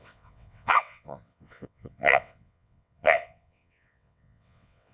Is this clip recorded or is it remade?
remade